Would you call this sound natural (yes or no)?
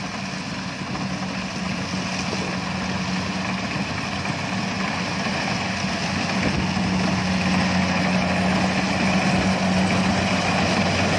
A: yes